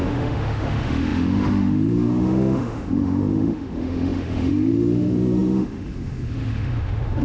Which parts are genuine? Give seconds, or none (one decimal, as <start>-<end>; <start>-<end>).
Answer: none